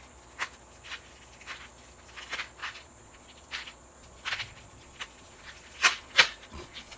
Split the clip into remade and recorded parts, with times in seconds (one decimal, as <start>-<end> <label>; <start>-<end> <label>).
0.0-2.6 recorded; 2.6-7.0 remade